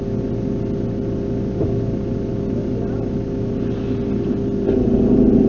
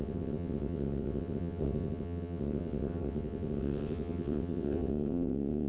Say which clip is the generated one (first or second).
second